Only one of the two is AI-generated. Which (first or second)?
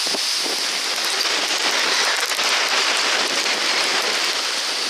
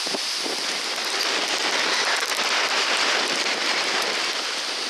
second